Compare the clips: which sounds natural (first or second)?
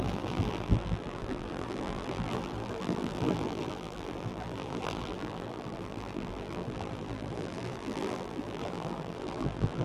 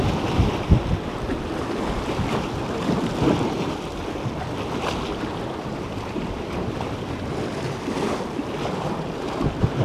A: second